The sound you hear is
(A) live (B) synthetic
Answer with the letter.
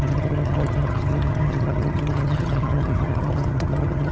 B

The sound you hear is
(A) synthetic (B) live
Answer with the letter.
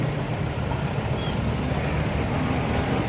B